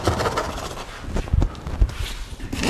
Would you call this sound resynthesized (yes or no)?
no